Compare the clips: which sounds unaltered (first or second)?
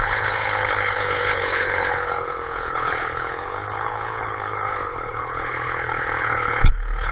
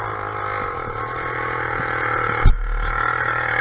second